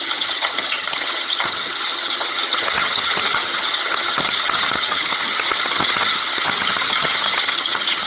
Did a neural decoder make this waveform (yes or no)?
yes